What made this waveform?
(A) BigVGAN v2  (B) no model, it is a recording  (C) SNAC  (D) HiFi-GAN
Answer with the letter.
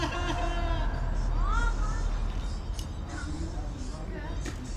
B